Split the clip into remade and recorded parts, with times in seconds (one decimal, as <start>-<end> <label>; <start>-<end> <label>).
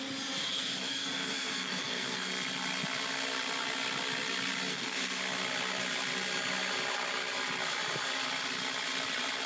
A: 0.0-0.4 recorded; 0.4-2.3 remade; 2.3-4.7 recorded; 4.7-5.2 remade; 5.2-9.5 recorded